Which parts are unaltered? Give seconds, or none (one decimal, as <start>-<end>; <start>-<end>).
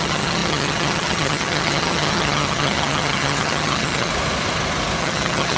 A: 4.1-5.0